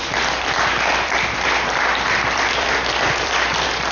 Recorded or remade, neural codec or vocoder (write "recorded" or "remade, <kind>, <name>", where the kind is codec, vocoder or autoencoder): remade, vocoder, BigVGAN v2